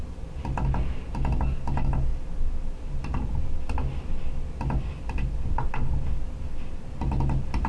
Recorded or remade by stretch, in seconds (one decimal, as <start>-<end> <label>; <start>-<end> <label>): 0.0-7.7 recorded

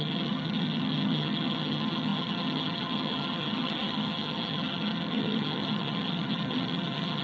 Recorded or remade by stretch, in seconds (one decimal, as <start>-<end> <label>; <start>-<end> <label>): 0.0-7.2 remade

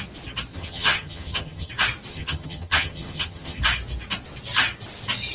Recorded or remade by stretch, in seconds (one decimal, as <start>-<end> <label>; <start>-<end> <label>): 0.0-0.5 recorded; 0.5-1.7 remade; 1.7-2.1 recorded; 2.1-3.6 remade; 3.6-5.3 recorded

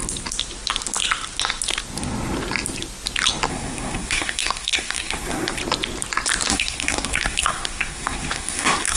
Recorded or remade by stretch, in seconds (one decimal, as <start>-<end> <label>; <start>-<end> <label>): 0.0-3.5 recorded; 3.5-5.6 remade; 5.6-6.5 recorded; 6.5-9.0 remade

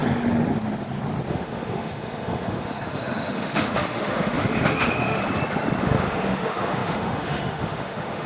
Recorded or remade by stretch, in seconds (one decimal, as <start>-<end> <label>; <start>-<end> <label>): 0.0-1.3 recorded; 1.3-5.2 remade; 5.2-5.8 recorded; 5.8-8.3 remade

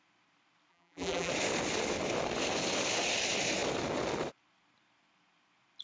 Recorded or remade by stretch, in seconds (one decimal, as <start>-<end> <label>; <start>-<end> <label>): 0.0-0.7 recorded; 0.7-1.3 remade; 1.3-5.8 recorded

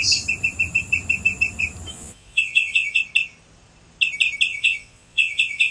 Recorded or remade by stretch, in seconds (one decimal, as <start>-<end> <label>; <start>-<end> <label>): 0.0-1.9 recorded; 1.9-3.0 remade; 3.0-4.5 recorded; 4.5-5.7 remade

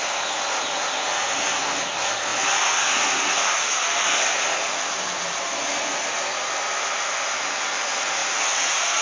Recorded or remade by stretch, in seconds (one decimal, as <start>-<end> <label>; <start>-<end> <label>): 0.0-9.0 recorded